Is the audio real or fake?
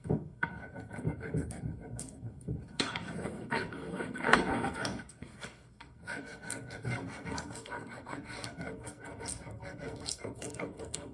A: fake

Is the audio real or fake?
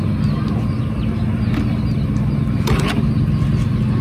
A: real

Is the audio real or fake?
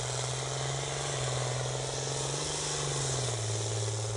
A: real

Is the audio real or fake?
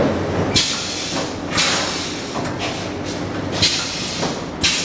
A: real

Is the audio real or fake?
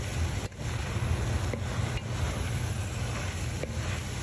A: real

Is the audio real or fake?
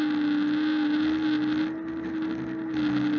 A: real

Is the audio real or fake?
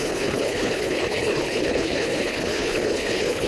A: fake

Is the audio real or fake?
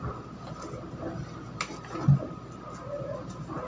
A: real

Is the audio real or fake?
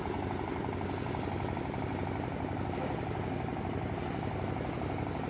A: real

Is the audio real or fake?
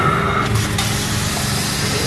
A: real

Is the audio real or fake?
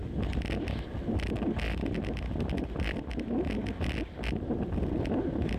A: real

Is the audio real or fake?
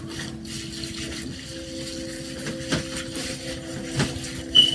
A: real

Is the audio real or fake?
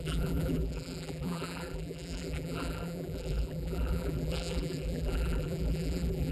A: fake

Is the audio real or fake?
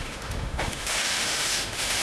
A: fake